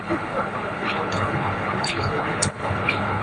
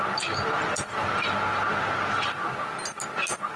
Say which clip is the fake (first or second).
first